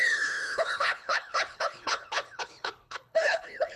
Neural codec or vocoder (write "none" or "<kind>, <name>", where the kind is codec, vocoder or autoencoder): codec, HILCodec